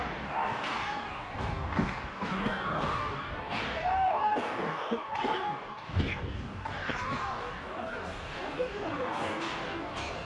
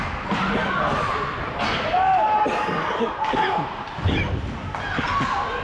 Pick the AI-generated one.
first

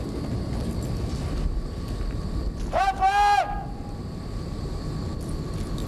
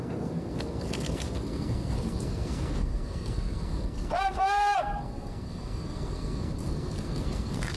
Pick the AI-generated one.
second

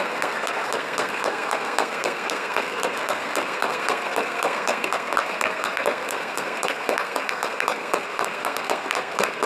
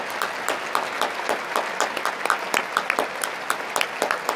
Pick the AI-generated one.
first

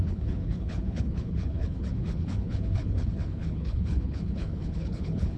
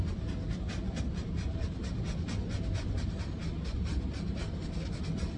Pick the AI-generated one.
first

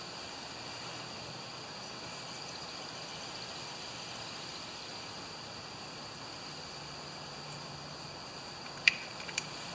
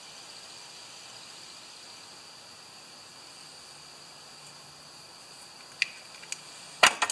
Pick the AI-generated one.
first